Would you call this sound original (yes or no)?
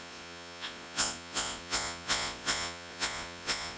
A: no